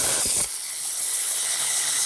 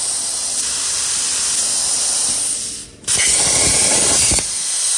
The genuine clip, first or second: second